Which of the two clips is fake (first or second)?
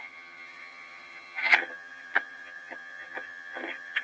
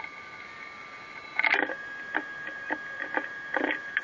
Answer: first